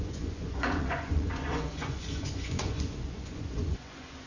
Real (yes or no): no